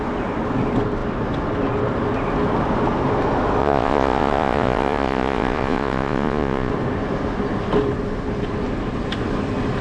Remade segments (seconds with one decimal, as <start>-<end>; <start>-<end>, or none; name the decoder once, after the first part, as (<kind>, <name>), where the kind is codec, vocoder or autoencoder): 3.6-6.7 (vocoder, Vocos)